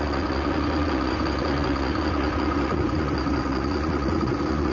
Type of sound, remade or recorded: remade